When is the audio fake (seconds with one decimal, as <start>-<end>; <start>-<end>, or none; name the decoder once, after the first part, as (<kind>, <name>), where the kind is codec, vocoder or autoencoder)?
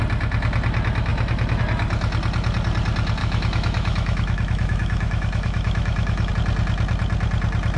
3.2-6.3 (autoencoder, DAC-VAE)